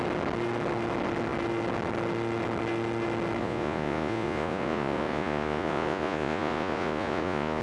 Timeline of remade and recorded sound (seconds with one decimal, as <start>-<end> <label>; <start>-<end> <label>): 0.0-3.4 recorded; 3.4-7.6 remade